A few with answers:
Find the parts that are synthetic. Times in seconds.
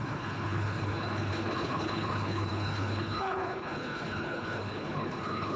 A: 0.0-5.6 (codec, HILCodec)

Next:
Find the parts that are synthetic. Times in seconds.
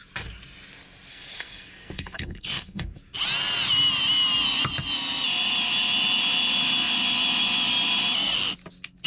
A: 1.1-3.0 (codec, SNAC)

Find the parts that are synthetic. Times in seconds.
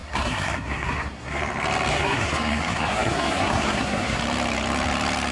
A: 0.0-1.4 (codec, SNAC); 1.9-4.2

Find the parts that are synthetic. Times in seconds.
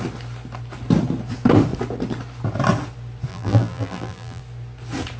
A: 3.3-4.4 (vocoder, BigVGAN v2)